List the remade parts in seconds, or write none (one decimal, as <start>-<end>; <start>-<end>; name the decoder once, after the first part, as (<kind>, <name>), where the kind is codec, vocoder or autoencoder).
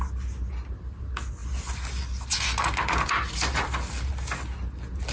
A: none